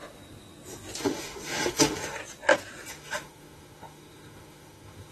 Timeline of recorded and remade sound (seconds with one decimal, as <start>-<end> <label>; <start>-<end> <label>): 0.0-1.0 recorded; 1.0-2.2 remade; 2.2-2.9 recorded; 2.9-5.1 remade